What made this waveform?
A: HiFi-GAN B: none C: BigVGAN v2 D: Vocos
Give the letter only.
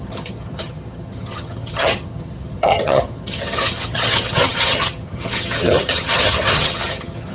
A